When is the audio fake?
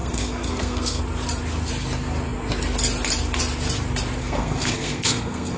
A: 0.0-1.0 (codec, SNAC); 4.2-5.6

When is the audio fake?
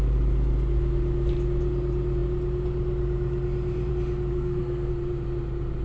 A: 4.3-4.9 (codec, SNAC)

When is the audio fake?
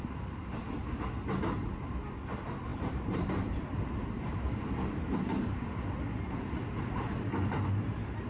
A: 2.7-5.8 (vocoder, BigVGAN v2)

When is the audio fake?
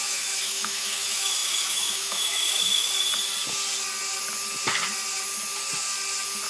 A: 0.0-2.9 (autoencoder, DAC-VAE)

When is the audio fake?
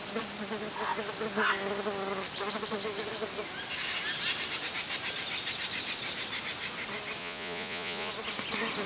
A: 7.2-8.1 (vocoder, Vocos)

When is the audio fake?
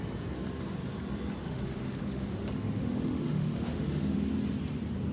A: 1.4-4.3 (autoencoder, DAC-VAE)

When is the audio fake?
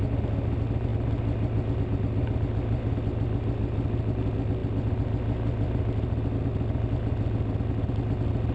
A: none